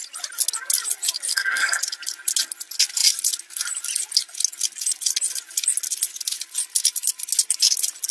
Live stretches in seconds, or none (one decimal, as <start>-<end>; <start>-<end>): 0.0-1.3; 1.8-8.1